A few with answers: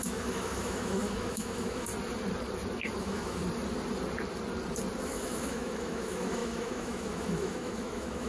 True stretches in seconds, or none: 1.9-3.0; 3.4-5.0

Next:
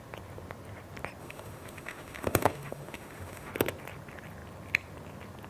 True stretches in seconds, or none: 0.0-1.2; 3.5-5.5

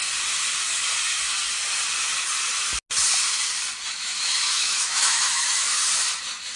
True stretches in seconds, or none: 0.0-4.0; 5.9-6.6

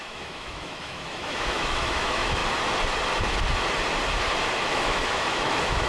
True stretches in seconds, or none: 2.4-4.7

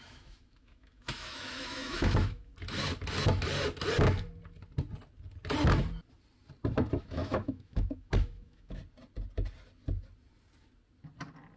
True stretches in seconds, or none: 2.5-7.0; 8.8-11.6

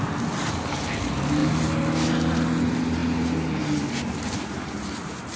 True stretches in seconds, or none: 0.0-5.4

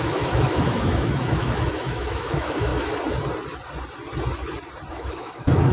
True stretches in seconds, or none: 2.7-4.9